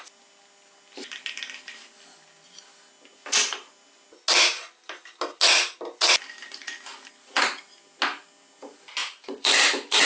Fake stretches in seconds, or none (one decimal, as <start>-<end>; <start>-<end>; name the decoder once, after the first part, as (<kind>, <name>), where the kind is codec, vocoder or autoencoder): 9.0-10.0 (vocoder, BigVGAN v2)